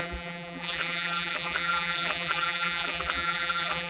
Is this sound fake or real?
fake